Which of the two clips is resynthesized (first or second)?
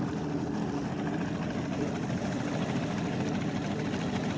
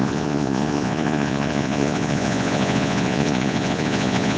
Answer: second